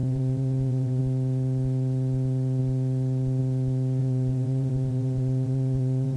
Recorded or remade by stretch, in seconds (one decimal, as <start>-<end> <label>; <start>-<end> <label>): 0.0-1.0 remade; 1.0-4.0 recorded; 4.0-6.2 remade